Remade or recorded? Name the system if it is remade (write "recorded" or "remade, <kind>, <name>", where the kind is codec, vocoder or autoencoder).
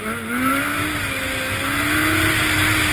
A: recorded